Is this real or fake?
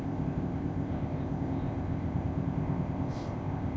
fake